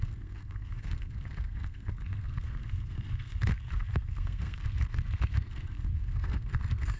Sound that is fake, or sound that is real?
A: fake